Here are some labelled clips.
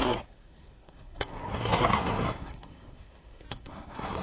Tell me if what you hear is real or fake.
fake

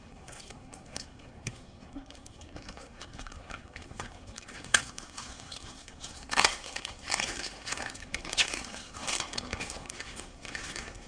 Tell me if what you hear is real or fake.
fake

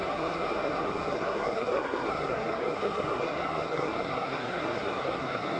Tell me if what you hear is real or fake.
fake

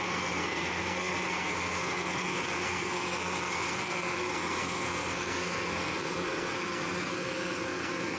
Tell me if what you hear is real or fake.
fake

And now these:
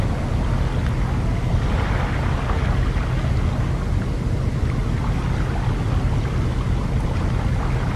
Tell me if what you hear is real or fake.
real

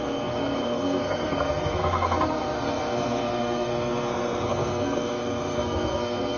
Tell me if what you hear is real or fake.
fake